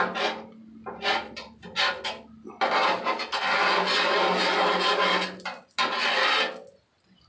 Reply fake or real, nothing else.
real